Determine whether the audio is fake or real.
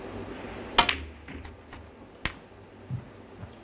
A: real